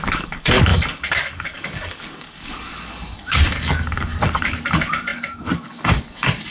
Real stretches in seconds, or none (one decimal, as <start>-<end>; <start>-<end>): none